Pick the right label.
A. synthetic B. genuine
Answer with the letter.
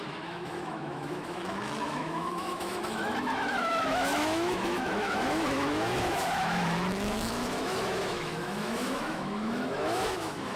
A